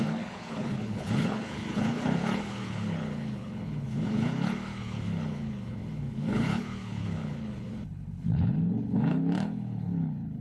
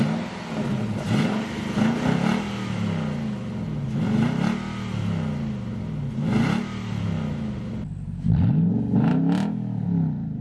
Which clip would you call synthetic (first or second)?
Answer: first